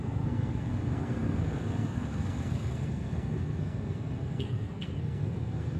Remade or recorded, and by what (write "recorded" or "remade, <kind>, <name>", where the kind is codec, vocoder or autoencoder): remade, codec, SNAC